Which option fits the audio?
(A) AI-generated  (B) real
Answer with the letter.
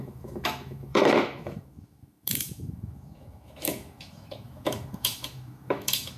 A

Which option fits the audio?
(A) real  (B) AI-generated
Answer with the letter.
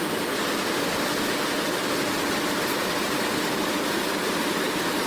A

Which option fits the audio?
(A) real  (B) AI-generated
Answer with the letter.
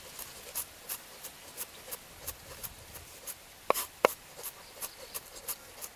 A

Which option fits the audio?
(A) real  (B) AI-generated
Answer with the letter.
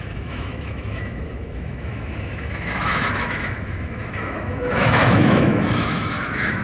B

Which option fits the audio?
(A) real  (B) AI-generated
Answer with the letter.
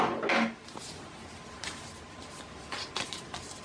A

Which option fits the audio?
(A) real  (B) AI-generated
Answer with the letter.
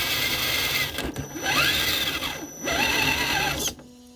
A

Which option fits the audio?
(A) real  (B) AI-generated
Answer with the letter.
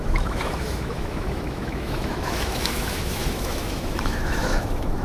B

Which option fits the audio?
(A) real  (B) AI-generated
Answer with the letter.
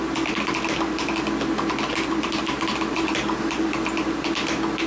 A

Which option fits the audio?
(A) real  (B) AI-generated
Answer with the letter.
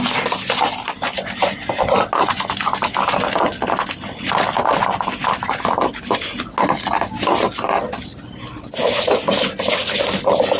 A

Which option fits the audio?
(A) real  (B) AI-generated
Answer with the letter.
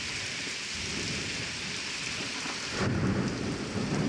A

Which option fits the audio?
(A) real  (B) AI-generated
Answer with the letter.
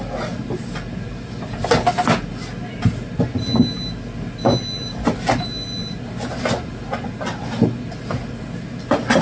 A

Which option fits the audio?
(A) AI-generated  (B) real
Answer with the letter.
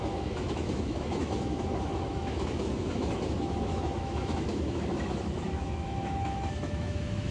A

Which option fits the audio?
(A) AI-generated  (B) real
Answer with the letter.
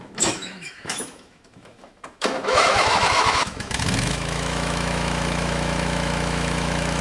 A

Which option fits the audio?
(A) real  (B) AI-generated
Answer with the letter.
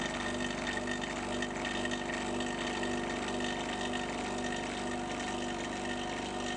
A